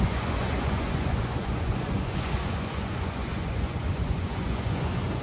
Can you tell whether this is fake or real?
fake